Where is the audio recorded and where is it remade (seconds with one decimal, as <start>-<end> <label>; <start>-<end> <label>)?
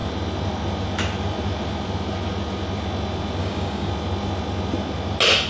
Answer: 0.0-3.4 recorded; 3.4-3.9 remade; 3.9-5.5 recorded